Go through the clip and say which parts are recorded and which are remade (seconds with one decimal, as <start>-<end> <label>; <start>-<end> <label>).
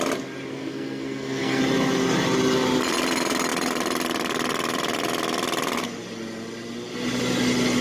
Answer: 0.0-0.5 recorded; 0.5-1.6 remade; 1.6-7.8 recorded